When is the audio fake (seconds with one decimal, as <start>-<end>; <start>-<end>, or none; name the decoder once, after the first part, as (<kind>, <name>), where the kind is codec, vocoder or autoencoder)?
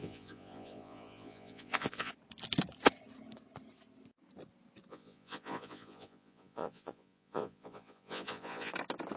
0.0-2.1 (vocoder, Vocos); 4.9-8.7